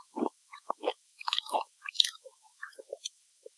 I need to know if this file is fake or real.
fake